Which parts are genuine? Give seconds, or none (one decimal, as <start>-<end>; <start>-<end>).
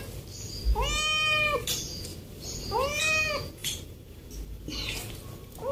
0.0-2.1; 3.0-3.6; 4.3-5.7